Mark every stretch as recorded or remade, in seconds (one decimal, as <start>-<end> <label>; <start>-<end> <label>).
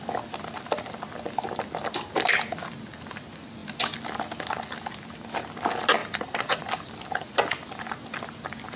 0.0-6.0 recorded; 6.0-6.7 remade; 6.7-8.8 recorded